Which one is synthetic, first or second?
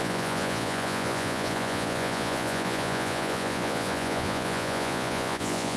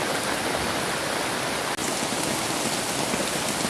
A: first